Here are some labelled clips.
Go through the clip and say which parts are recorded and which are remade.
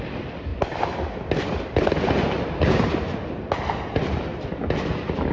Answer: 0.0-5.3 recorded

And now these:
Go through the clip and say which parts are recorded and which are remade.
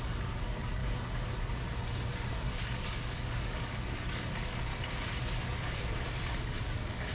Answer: 0.0-0.8 remade; 0.8-2.3 recorded; 2.3-4.7 remade; 4.7-6.6 recorded; 6.6-7.1 remade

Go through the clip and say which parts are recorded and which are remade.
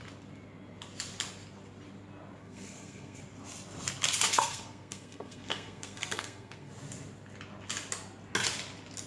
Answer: 0.0-2.4 recorded; 2.4-3.2 remade; 3.2-4.3 recorded; 4.3-6.7 remade; 6.7-9.1 recorded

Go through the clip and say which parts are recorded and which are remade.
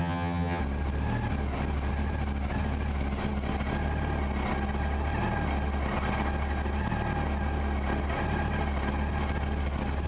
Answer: 0.0-0.6 remade; 0.6-10.1 recorded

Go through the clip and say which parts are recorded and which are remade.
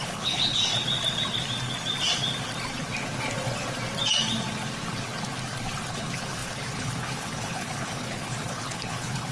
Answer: 0.0-0.6 remade; 0.6-5.9 recorded; 5.9-9.3 remade